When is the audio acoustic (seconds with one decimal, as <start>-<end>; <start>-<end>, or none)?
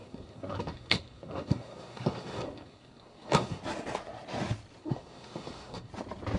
3.6-4.8; 5.9-6.4